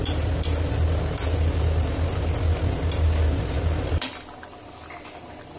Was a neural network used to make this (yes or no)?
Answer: no